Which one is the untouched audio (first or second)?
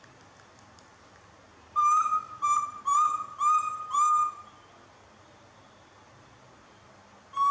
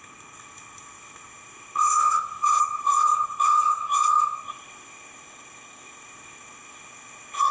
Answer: first